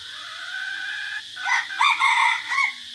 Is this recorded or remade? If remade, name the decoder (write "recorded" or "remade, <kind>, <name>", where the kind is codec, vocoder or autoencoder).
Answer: remade, vocoder, Vocos